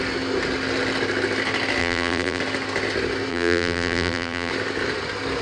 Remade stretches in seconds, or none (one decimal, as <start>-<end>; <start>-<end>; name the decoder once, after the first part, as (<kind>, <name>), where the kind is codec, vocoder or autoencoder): 1.8-2.4 (vocoder, BigVGAN v2); 3.3-4.5